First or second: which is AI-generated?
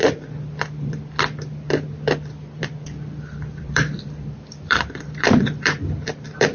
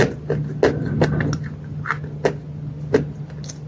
first